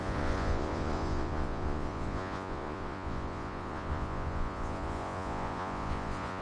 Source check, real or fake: fake